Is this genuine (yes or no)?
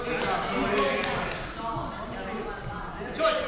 yes